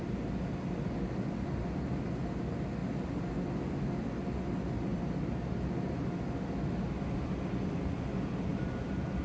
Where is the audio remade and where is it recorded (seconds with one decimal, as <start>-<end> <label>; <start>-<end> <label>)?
0.0-4.9 recorded; 4.9-5.8 remade; 5.8-8.5 recorded; 8.5-9.2 remade